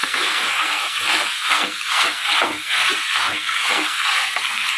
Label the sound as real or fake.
fake